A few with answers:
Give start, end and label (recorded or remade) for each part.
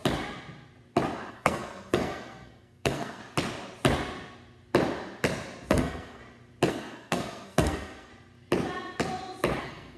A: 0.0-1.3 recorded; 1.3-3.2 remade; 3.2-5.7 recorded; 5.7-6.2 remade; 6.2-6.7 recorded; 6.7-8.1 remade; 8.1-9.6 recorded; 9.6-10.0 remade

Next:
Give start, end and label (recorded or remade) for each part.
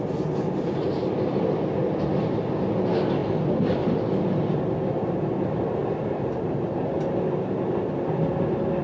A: 0.0-8.8 recorded